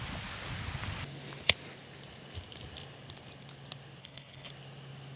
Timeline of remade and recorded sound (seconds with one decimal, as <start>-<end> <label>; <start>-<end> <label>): 0.0-4.0 recorded; 4.0-4.5 remade; 4.5-5.2 recorded